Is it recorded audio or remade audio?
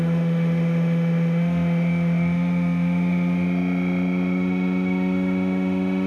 remade